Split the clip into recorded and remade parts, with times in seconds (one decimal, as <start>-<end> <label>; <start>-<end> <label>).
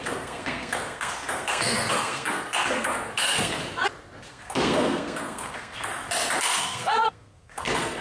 0.0-3.6 remade; 3.6-4.3 recorded; 4.3-5.9 remade; 5.9-6.6 recorded; 6.6-8.0 remade